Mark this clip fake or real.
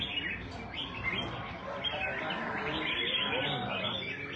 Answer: real